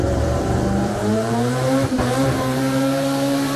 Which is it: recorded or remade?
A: remade